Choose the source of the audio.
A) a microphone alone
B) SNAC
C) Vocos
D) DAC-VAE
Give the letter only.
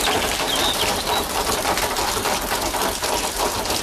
A